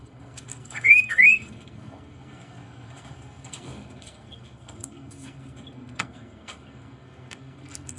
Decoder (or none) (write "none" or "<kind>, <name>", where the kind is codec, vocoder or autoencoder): codec, SNAC